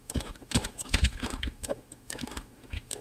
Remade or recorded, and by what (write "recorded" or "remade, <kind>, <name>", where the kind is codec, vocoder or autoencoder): remade, autoencoder, DAC-VAE